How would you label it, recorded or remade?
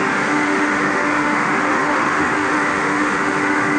remade